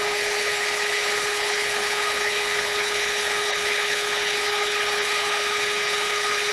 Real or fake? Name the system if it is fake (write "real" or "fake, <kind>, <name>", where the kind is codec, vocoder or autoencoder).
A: fake, codec, HILCodec